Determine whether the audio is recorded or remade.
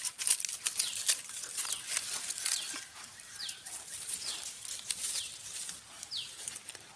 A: recorded